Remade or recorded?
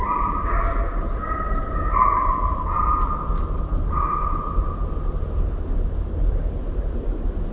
recorded